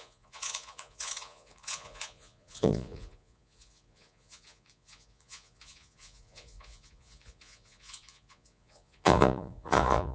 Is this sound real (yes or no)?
no